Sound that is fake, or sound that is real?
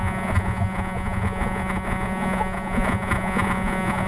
fake